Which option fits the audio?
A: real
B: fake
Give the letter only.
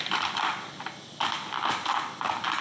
A